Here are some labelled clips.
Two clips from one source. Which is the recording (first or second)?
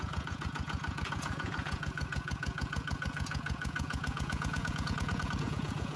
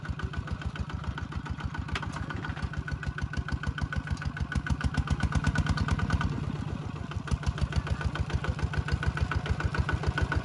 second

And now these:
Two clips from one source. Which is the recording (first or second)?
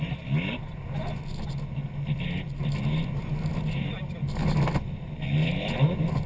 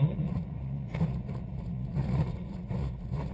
first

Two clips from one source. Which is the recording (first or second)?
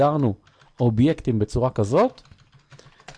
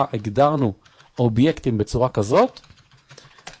first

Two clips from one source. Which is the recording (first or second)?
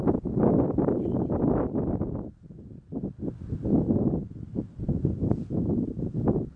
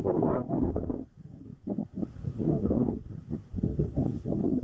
first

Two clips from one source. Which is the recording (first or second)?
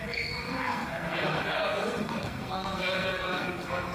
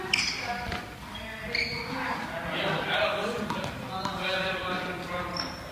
second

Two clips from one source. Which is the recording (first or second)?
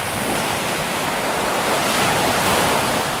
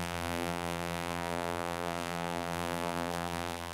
first